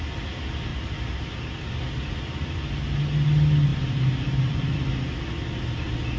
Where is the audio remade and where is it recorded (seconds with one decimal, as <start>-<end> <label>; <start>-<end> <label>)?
0.0-0.7 recorded; 0.7-1.8 remade; 1.8-3.7 recorded; 3.7-5.0 remade; 5.0-6.2 recorded